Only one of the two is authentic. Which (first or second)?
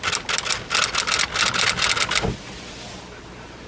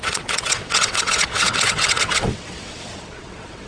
first